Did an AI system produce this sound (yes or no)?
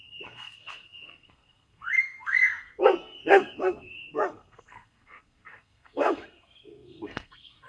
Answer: yes